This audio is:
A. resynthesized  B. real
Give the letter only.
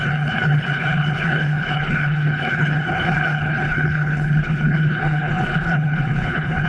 A